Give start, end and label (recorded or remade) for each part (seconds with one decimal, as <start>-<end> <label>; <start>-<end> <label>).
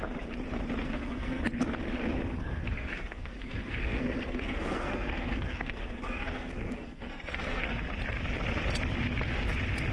0.0-0.8 recorded; 0.8-1.4 remade; 1.4-2.6 recorded; 2.6-7.7 remade; 7.7-9.9 recorded